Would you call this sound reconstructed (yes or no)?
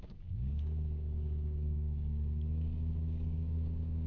yes